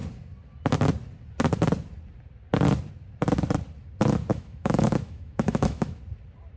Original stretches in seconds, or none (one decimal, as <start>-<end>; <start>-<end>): 0.0-4.3; 6.0-6.6